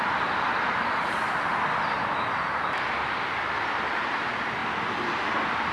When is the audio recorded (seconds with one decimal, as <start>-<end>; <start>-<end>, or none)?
1.5-3.5; 4.6-5.3